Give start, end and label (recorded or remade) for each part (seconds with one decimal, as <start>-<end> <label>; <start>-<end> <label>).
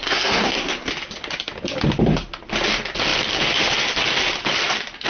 0.0-0.9 remade; 0.9-5.1 recorded